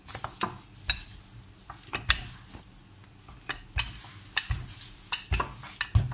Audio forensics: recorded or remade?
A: recorded